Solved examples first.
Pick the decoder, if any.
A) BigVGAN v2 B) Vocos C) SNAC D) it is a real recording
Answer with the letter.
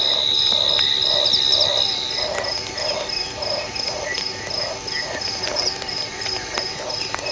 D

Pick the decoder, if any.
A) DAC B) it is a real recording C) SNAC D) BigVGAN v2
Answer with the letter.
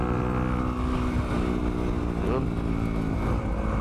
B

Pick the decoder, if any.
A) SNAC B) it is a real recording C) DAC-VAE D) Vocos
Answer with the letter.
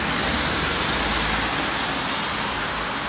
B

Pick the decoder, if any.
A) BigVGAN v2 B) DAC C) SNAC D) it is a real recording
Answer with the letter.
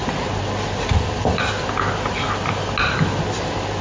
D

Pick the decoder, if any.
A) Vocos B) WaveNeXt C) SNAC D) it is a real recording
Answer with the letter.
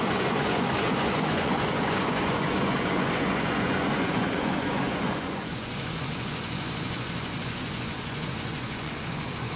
A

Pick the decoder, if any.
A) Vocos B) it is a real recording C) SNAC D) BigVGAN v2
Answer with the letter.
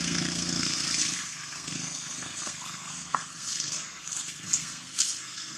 C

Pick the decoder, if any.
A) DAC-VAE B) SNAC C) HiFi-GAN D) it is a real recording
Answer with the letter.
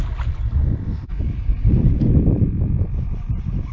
D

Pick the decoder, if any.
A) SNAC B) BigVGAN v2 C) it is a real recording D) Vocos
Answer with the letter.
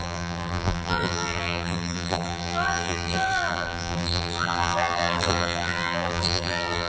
B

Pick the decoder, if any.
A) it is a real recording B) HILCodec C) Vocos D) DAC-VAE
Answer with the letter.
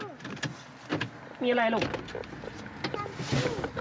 A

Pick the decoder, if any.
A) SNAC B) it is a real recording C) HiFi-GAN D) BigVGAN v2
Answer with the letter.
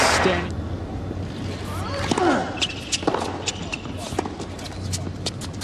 B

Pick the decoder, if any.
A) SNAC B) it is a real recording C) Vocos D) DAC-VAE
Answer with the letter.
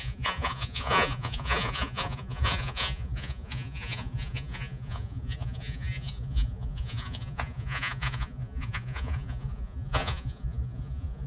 C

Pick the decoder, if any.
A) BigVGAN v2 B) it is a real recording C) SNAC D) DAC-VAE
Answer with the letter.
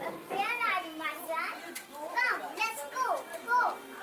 A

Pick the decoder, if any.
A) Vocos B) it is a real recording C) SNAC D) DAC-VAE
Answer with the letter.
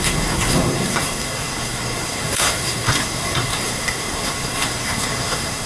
C